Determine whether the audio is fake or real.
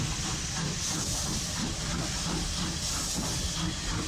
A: real